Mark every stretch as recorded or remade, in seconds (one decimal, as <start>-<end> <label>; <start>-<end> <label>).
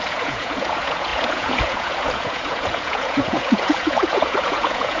0.0-5.0 remade